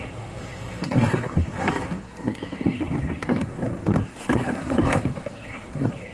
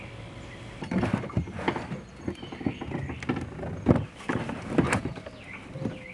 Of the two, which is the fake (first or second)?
first